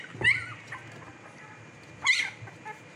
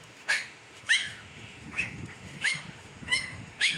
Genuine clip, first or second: first